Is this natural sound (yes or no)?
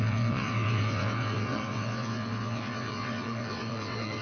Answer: no